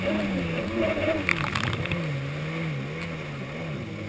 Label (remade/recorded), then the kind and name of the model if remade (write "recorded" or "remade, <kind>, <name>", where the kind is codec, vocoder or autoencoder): recorded